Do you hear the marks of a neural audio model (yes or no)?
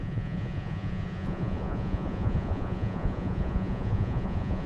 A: yes